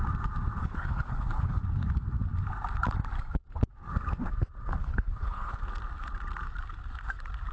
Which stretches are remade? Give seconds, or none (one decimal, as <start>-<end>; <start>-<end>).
0.6-1.6; 4.8-5.6